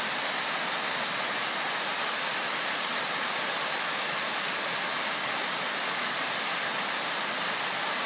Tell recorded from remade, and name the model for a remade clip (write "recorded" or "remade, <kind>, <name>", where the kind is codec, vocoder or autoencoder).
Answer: recorded